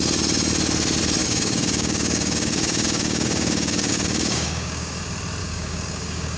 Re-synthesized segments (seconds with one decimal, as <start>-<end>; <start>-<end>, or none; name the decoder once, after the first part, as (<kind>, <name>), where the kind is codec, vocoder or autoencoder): 1.2-5.0 (codec, DAC); 5.4-6.4